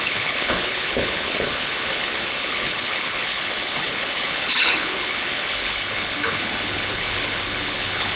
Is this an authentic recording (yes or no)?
no